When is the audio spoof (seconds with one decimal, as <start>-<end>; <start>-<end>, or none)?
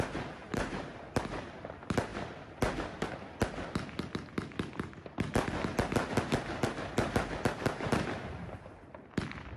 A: 0.4-1.0